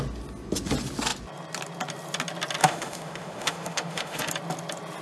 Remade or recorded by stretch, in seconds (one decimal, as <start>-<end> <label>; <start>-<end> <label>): 0.0-2.6 recorded; 2.6-4.3 remade; 4.3-5.0 recorded